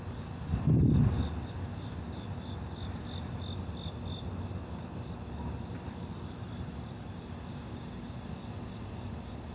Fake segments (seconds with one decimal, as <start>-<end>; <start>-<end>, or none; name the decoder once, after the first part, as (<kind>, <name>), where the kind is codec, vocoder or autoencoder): 7.5-8.2 (codec, DAC)